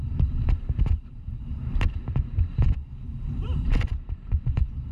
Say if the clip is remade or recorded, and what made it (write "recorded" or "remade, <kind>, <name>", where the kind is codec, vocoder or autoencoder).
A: remade, vocoder, BigVGAN v2